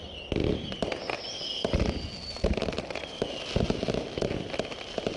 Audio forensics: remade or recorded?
recorded